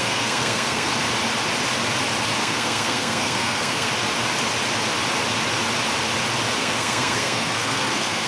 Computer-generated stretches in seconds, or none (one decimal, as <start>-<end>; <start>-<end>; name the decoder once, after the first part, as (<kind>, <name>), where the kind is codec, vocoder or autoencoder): 0.0-0.9 (codec, SNAC); 2.4-3.9; 6.6-8.3

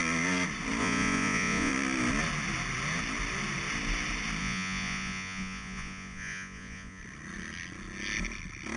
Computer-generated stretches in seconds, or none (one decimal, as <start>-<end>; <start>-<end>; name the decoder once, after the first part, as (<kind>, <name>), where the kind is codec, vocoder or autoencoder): 0.8-1.7 (vocoder, Vocos); 4.4-7.0

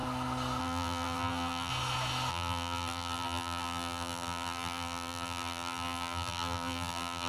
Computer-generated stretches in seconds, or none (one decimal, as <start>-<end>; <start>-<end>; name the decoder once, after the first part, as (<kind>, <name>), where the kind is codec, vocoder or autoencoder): 0.6-1.7 (vocoder, BigVGAN v2); 2.3-7.3

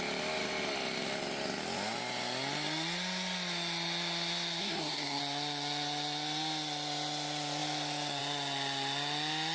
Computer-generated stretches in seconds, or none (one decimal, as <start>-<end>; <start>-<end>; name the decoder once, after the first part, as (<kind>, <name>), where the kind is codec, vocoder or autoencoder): 4.6-5.2 (codec, SNAC)

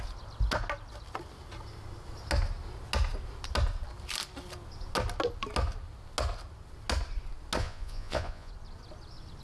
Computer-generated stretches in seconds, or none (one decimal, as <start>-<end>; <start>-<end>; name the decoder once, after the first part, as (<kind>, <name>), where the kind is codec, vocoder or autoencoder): 7.6-8.5 (vocoder, Vocos)

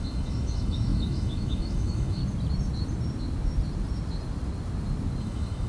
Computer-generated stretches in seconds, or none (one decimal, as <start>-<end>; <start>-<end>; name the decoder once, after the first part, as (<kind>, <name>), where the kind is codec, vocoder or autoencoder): 0.0-2.2 (autoencoder, DAC-VAE); 5.2-5.7